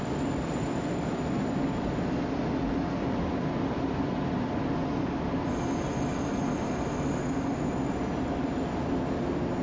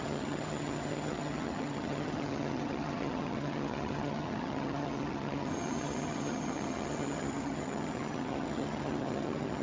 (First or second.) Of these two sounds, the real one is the first